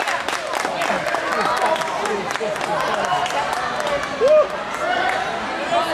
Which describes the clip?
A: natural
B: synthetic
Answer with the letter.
A